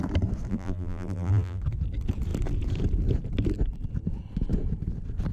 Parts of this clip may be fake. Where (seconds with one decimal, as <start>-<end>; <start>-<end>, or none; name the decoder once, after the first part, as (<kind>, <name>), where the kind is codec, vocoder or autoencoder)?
0.5-1.6 (vocoder, BigVGAN v2)